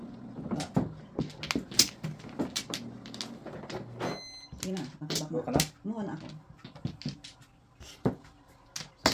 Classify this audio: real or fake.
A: real